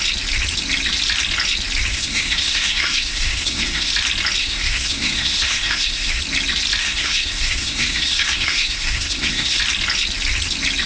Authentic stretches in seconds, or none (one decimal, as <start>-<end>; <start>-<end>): 0.0-1.9; 3.9-4.4; 6.2-6.8; 9.6-10.9